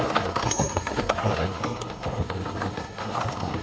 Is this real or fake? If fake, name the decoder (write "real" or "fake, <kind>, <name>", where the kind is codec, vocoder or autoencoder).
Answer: fake, codec, SNAC